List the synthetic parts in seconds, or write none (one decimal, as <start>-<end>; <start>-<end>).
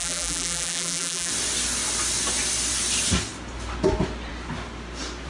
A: 0.0-1.3